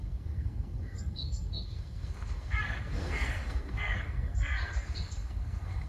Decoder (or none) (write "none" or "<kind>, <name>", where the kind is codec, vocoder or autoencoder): codec, SNAC